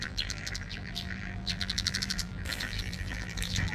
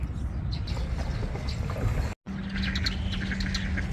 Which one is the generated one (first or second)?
first